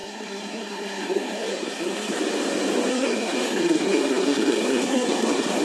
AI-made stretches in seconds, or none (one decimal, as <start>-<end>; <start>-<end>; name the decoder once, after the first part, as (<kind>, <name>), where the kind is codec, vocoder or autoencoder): 0.0-2.2 (codec, SNAC); 2.9-5.6

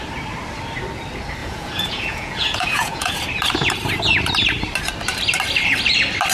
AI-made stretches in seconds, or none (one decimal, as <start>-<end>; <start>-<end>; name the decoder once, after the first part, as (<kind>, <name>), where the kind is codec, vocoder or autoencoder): 1.4-3.1 (vocoder, Vocos)

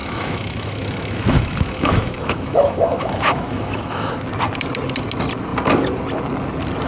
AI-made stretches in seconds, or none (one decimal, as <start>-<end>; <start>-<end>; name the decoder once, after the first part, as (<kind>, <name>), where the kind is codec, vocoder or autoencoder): 0.0-4.1 (autoencoder, DAC-VAE)

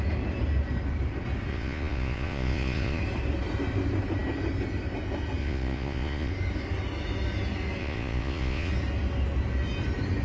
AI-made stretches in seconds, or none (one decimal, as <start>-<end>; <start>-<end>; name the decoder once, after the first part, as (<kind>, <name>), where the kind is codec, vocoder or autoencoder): 1.5-3.0 (vocoder, Vocos); 5.4-6.3; 7.8-8.7

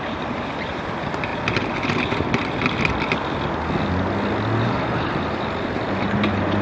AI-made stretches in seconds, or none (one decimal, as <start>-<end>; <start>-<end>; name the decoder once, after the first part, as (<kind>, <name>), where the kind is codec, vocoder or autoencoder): 0.0-1.3 (vocoder, BigVGAN v2); 4.6-6.6